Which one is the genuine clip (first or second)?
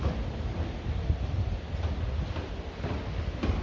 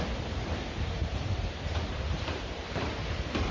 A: first